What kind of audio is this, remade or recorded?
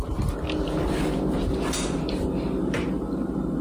recorded